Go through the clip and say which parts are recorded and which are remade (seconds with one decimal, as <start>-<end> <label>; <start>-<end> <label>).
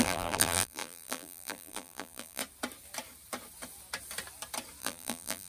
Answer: 0.0-2.4 remade; 2.4-4.8 recorded; 4.8-5.5 remade